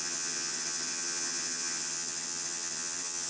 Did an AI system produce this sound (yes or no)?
yes